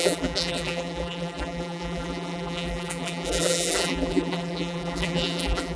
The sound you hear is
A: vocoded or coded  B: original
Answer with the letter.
A